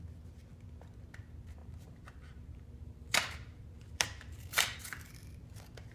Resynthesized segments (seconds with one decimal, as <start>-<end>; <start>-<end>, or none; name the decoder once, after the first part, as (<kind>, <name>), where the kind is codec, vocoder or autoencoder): 1.6-5.1 (vocoder, BigVGAN v2)